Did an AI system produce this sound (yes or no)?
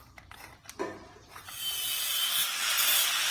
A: no